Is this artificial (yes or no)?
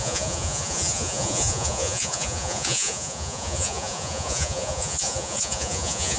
yes